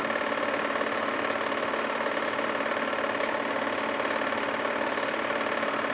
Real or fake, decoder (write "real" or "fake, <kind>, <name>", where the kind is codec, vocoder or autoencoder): real